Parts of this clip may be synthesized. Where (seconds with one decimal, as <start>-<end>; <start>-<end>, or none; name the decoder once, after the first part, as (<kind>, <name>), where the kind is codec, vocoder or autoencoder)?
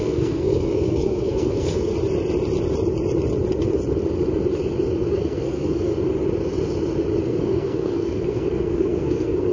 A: 0.0-1.9 (codec, SNAC); 5.1-5.9; 7.2-9.5